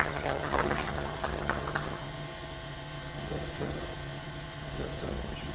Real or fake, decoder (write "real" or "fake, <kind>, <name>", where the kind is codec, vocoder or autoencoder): fake, vocoder, HiFi-GAN